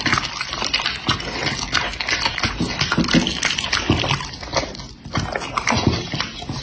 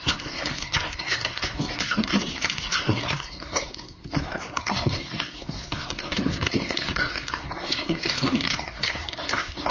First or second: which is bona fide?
first